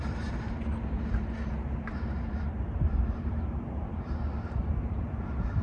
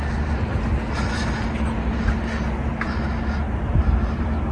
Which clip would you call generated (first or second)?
first